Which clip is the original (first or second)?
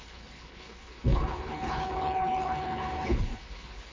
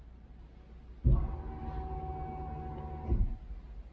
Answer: second